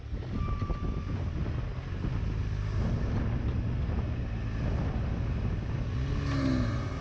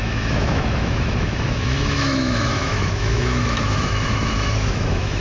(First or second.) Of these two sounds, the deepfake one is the second